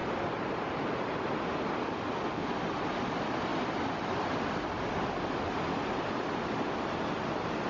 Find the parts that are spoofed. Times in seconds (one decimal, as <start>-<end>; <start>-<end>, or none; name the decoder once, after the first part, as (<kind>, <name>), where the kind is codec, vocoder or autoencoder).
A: 3.5-4.7 (vocoder, BigVGAN v2)